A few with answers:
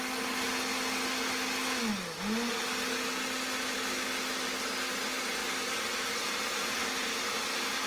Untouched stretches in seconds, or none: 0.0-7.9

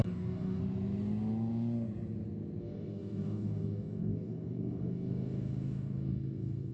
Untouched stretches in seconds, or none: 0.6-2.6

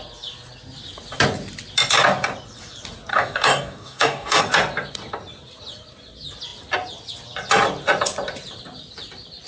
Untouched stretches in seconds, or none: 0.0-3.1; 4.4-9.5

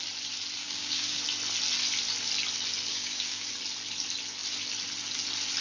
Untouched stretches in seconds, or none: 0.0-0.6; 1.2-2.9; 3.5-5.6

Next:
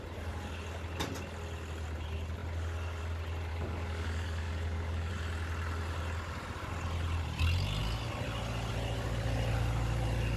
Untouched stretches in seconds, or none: 0.0-3.5; 5.1-10.4

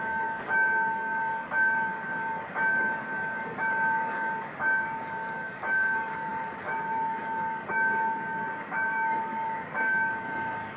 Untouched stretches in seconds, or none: none

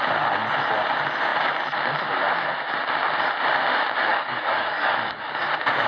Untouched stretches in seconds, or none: 0.0-4.1; 5.4-5.9